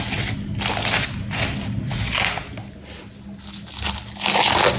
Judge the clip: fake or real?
real